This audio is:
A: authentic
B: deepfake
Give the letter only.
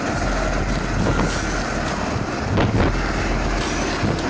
A